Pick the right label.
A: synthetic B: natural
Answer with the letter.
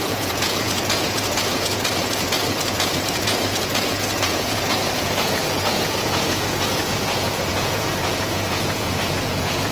A